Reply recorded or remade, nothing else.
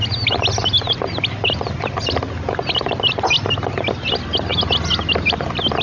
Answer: recorded